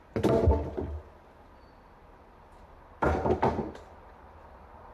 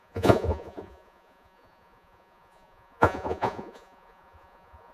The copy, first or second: second